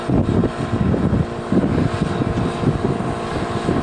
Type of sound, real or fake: fake